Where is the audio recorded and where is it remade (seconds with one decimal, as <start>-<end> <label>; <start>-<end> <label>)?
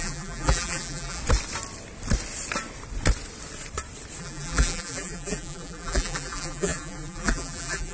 0.0-1.2 remade; 1.2-4.2 recorded; 4.2-7.9 remade